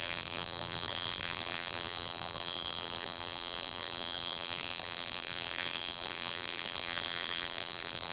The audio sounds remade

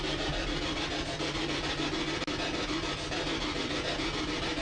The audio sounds recorded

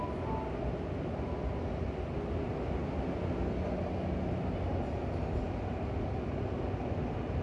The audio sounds recorded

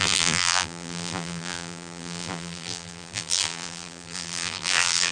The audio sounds remade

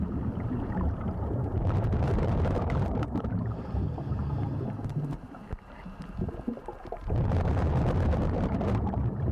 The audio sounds remade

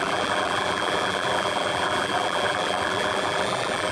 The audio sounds remade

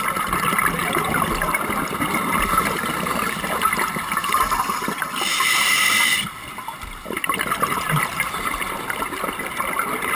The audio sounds recorded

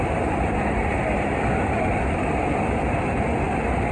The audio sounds remade